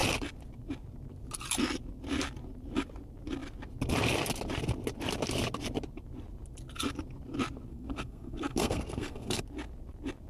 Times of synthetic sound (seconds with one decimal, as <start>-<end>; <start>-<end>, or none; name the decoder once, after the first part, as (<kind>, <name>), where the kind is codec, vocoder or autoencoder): 7.7-9.4 (codec, SNAC)